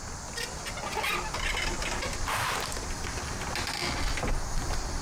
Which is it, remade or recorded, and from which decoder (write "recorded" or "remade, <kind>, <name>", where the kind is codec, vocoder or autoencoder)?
recorded